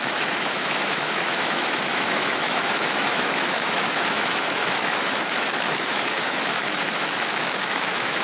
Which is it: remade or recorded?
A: remade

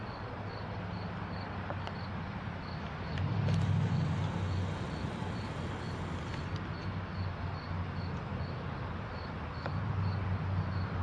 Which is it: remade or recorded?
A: recorded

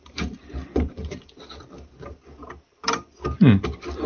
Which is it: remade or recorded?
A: remade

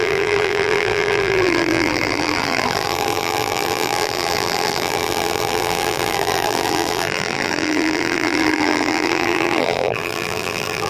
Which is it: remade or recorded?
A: remade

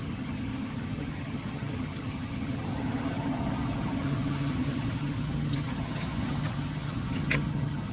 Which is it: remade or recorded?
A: remade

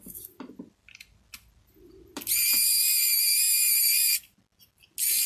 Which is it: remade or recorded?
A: recorded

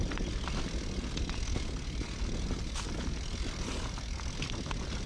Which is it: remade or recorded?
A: recorded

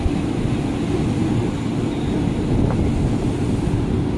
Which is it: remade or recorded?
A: recorded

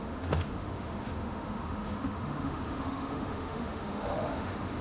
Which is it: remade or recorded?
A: remade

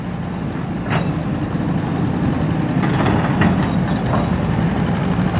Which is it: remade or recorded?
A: recorded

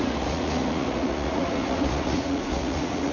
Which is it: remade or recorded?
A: remade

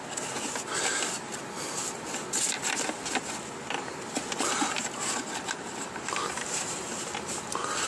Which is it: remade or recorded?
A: recorded